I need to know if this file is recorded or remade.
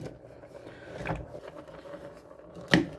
recorded